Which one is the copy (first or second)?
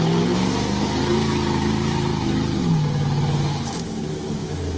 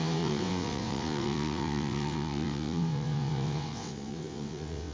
second